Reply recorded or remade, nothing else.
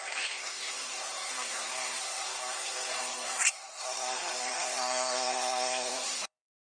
remade